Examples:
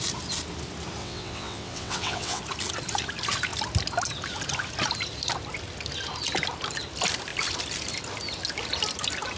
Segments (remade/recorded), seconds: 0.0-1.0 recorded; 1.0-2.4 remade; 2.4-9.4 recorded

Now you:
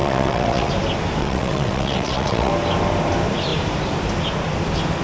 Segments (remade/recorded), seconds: 0.0-0.7 remade; 0.7-1.2 recorded; 1.2-2.5 remade; 2.5-5.0 recorded

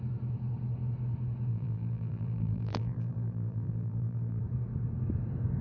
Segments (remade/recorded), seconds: 0.0-1.5 recorded; 1.5-4.4 remade; 4.4-5.6 recorded

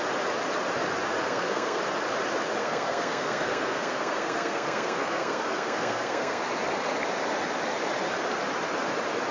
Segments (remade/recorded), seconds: 0.0-1.2 recorded; 1.2-1.8 remade; 1.8-2.6 recorded; 2.6-6.4 remade; 6.4-9.3 recorded

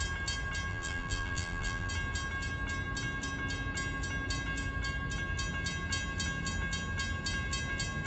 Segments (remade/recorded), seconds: 0.0-0.7 recorded; 0.7-1.9 remade; 1.9-8.1 recorded